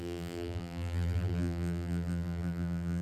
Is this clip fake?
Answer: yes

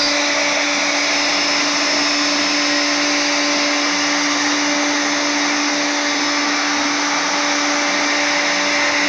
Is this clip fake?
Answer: no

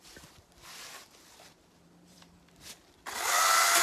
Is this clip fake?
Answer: yes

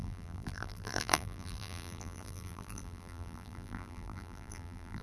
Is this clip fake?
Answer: yes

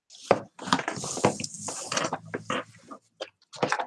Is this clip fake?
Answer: no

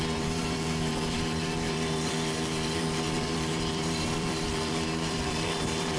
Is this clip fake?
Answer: yes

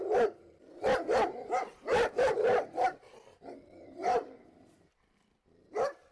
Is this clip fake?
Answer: yes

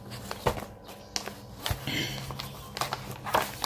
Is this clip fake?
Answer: no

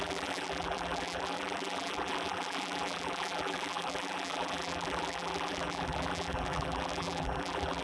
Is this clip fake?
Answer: yes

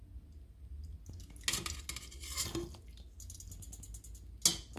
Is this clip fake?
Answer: no